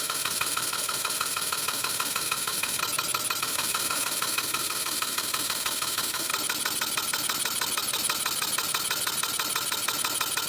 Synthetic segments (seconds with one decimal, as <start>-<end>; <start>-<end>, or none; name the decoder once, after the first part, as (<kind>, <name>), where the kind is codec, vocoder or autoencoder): 0.0-2.8 (autoencoder, DAC-VAE); 3.4-6.3